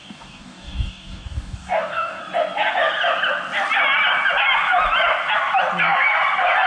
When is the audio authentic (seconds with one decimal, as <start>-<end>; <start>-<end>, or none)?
2.2-6.7